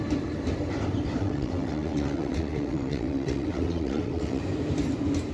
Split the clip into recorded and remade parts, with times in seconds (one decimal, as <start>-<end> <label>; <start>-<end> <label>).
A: 0.0-1.2 recorded; 1.2-4.4 remade; 4.4-5.3 recorded